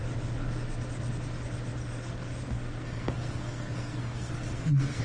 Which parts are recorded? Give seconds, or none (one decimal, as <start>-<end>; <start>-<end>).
0.0-1.8